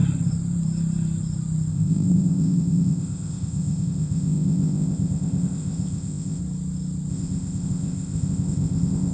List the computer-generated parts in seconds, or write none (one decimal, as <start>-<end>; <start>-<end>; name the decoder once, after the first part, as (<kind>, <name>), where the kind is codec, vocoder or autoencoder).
1.7-6.4 (codec, ZipCodec); 7.1-9.1